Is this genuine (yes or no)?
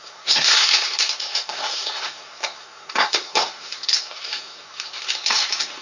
no